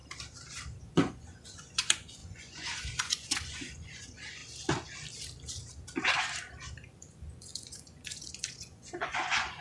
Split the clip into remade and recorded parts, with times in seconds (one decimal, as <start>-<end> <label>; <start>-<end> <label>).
0.0-0.8 recorded; 0.8-4.4 remade; 4.4-7.0 recorded; 7.0-9.6 remade

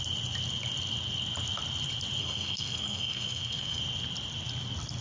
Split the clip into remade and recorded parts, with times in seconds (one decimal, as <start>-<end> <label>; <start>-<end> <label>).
0.0-2.2 recorded; 2.2-3.8 remade; 3.8-5.0 recorded

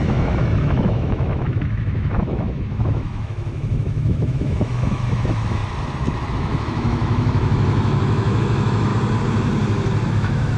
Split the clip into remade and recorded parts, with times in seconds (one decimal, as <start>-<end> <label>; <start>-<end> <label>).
0.0-5.6 remade; 5.6-6.3 recorded; 6.3-8.9 remade; 8.9-10.1 recorded; 10.1-10.6 remade

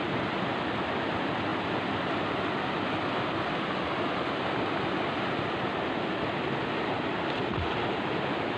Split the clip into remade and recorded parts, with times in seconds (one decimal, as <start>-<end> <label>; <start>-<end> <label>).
0.0-8.6 recorded

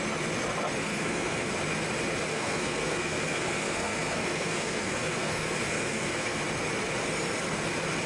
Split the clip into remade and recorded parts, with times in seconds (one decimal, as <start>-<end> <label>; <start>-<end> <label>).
0.0-0.8 recorded; 0.8-1.5 remade; 1.5-2.3 recorded; 2.3-6.4 remade; 6.4-8.1 recorded

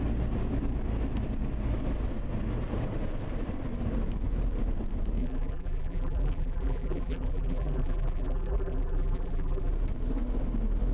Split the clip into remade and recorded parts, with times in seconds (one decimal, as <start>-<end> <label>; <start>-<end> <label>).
0.0-5.2 recorded; 5.2-9.7 remade; 9.7-10.9 recorded

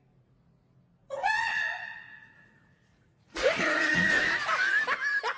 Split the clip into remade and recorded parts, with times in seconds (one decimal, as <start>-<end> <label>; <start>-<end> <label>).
0.0-1.0 recorded; 1.0-4.2 remade; 4.2-5.4 recorded